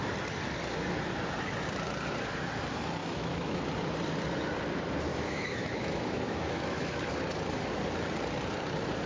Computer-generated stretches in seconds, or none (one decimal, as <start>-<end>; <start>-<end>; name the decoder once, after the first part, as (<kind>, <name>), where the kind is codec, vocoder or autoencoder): 3.0-3.6 (autoencoder, DAC-VAE); 5.1-7.0